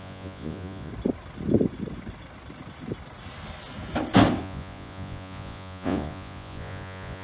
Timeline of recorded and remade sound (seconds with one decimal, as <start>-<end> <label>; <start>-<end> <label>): 0.0-0.9 remade; 0.9-4.4 recorded; 4.4-7.2 remade